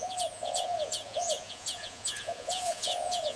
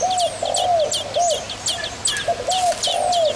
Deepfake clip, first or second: first